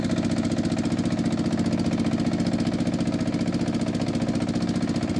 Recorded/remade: recorded